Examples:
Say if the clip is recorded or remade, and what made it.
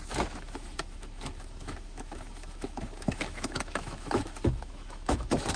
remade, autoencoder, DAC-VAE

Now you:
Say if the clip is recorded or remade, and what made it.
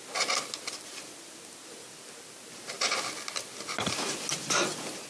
recorded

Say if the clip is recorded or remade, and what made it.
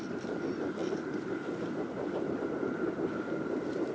remade, vocoder, BigVGAN v2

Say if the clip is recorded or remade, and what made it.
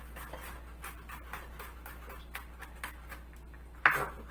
recorded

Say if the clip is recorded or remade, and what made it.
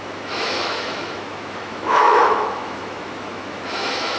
remade, autoencoder, DAC-VAE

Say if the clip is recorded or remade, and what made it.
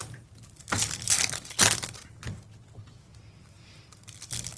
recorded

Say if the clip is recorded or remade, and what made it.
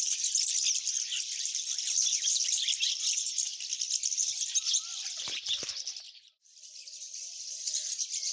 recorded